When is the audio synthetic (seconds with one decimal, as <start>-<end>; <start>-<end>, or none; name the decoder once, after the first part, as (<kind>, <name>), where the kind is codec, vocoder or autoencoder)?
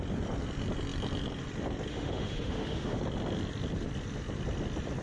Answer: 1.9-3.0 (autoencoder, DAC-VAE)